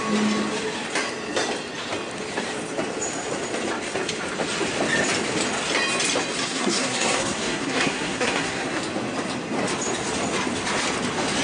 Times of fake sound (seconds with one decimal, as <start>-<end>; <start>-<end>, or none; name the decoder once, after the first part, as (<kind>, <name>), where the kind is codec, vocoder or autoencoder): 6.4-8.8 (codec, SNAC)